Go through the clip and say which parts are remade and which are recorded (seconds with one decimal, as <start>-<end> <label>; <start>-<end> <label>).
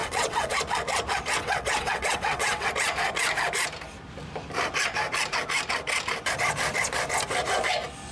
0.0-0.6 remade; 0.6-1.4 recorded; 1.4-2.7 remade; 2.7-8.1 recorded